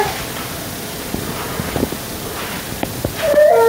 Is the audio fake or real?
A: real